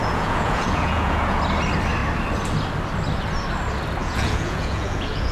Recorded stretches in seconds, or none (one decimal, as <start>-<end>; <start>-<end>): 1.4-4.0